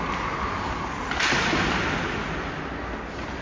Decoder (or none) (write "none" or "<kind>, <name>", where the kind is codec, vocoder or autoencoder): none